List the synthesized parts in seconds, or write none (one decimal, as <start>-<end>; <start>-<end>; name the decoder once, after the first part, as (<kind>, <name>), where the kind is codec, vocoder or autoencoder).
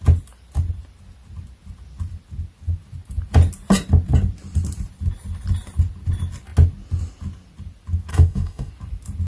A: 8.1-8.7 (autoencoder, DAC-VAE)